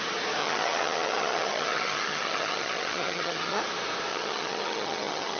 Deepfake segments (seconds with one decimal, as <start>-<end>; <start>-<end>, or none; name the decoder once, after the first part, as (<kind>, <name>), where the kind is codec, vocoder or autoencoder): 0.4-3.6 (vocoder, HiFi-GAN); 4.1-5.4